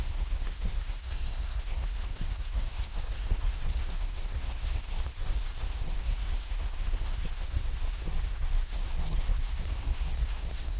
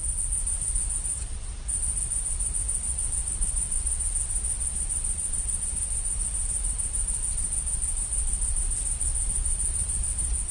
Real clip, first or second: second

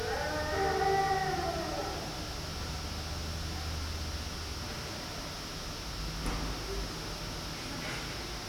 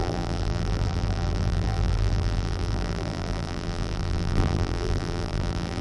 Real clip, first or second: first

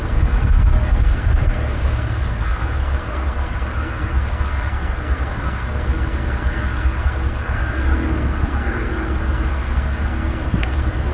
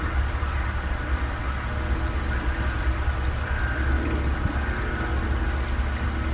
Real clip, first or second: second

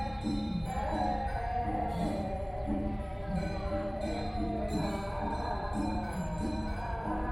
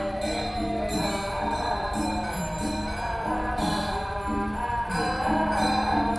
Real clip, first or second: second